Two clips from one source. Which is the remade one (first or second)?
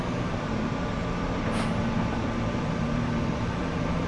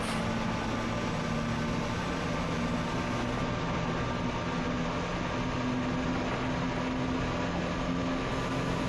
first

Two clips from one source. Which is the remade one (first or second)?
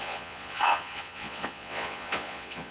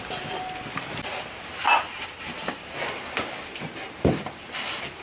first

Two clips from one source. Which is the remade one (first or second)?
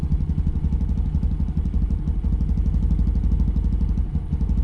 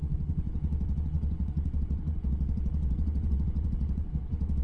second